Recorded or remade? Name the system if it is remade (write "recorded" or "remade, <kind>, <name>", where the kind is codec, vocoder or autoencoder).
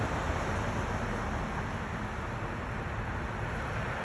recorded